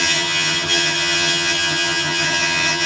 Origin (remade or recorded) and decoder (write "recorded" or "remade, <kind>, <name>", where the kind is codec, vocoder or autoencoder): remade, vocoder, HiFi-GAN